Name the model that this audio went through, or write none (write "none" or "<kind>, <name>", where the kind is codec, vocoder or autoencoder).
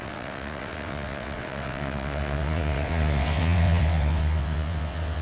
vocoder, WaveNeXt